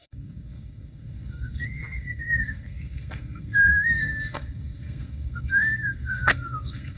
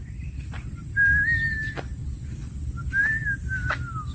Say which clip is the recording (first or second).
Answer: second